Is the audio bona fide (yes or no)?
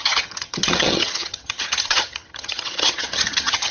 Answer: no